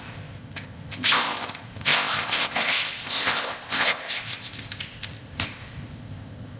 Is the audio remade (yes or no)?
yes